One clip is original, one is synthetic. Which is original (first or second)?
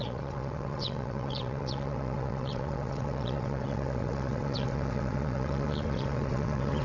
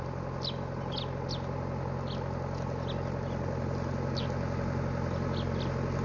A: second